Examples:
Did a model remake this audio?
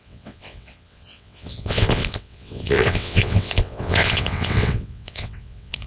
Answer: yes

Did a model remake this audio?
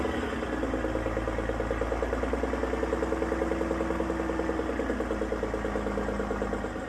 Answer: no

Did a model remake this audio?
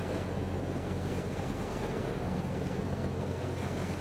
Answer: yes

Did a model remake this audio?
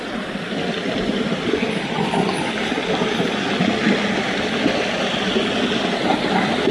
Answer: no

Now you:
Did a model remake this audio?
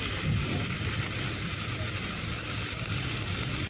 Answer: yes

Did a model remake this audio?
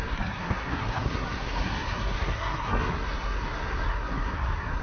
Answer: yes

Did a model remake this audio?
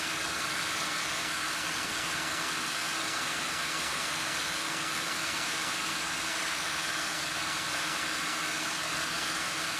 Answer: yes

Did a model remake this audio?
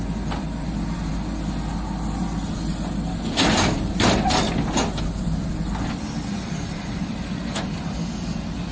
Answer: no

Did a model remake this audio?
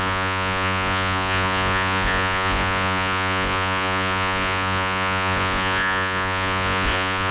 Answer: yes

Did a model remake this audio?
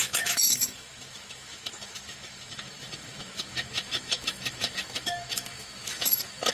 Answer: yes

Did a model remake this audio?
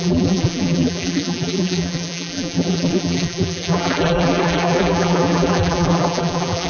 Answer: yes